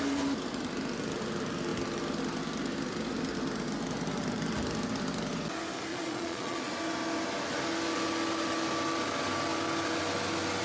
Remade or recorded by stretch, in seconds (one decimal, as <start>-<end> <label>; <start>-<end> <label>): 0.0-5.9 recorded; 5.9-6.7 remade; 6.7-10.6 recorded